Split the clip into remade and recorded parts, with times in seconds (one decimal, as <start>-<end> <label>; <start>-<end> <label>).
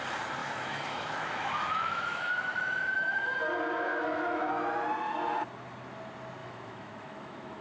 0.0-0.4 recorded; 0.4-3.4 remade; 3.4-3.9 recorded; 3.9-4.5 remade; 4.5-6.4 recorded; 6.4-7.6 remade